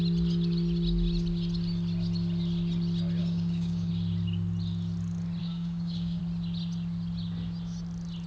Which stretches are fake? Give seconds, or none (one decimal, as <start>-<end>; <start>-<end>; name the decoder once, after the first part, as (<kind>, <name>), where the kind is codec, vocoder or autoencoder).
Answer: 3.2-3.9 (codec, DAC); 5.4-6.2